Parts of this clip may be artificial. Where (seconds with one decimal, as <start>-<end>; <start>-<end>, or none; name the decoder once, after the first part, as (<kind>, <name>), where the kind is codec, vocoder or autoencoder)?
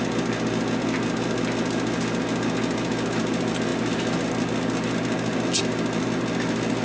none